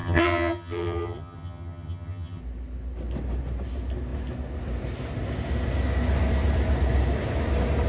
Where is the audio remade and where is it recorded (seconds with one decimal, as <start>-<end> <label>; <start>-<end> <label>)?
0.0-2.4 remade; 2.4-7.9 recorded